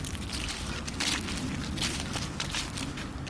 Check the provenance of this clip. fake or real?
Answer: real